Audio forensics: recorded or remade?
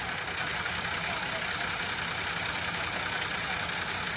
recorded